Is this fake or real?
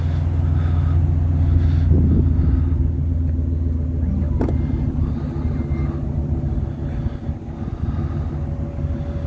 real